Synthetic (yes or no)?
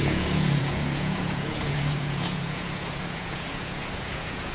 yes